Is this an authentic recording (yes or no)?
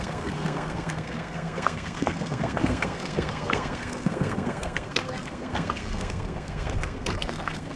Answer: no